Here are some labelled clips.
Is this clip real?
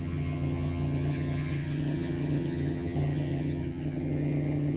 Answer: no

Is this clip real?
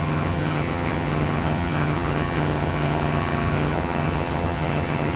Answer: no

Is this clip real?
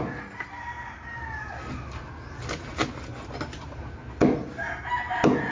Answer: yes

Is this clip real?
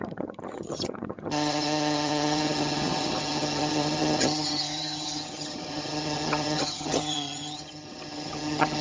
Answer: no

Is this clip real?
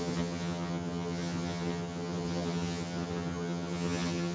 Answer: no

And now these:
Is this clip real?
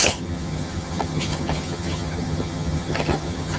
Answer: no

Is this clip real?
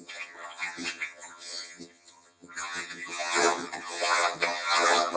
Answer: no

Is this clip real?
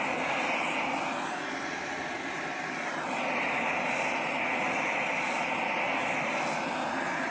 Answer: yes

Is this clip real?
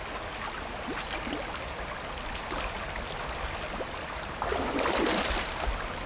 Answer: yes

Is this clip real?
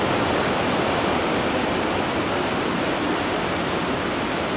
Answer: yes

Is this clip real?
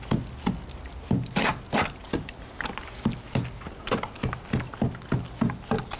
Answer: yes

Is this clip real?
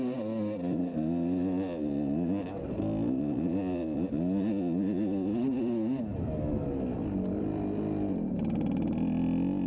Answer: yes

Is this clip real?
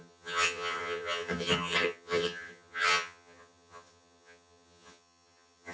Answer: no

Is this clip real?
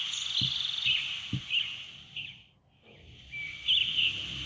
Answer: yes